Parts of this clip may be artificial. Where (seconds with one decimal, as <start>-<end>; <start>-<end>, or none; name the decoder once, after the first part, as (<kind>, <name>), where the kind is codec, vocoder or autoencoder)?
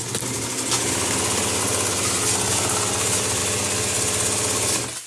2.5-3.4 (vocoder, BigVGAN v2)